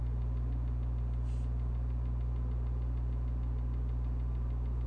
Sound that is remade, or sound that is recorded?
recorded